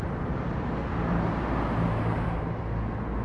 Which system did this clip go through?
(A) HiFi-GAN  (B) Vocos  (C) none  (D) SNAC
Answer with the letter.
C